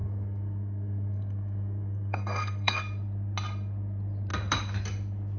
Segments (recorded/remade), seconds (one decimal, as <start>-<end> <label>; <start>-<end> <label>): 0.0-2.8 remade; 2.8-5.4 recorded